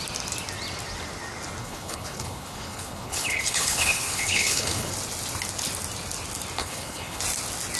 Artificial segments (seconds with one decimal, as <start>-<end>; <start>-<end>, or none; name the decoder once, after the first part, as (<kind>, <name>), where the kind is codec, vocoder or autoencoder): 1.6-4.9 (codec, HILCodec); 6.6-7.2